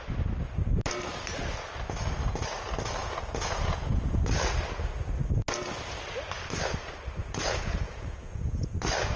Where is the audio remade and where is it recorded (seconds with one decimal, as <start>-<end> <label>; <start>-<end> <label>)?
0.0-3.0 recorded; 3.0-4.2 remade; 4.2-7.2 recorded; 7.2-8.7 remade; 8.7-9.2 recorded